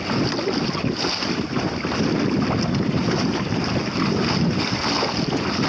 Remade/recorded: recorded